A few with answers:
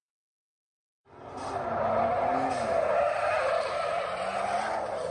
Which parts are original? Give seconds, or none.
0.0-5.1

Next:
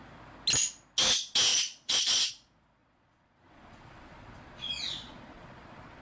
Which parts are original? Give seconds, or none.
0.0-1.5; 2.3-2.8

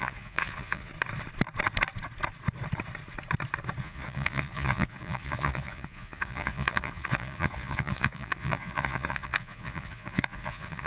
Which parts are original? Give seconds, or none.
0.9-3.8

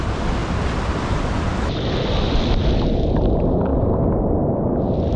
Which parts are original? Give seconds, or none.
0.0-5.2

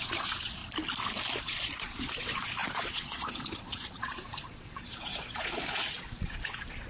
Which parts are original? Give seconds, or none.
0.6-1.4

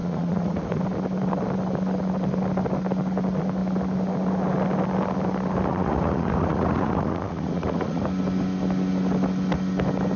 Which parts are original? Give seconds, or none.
0.8-5.7; 8.0-10.2

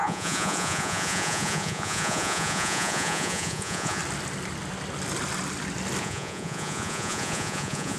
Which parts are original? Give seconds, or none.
4.0-6.0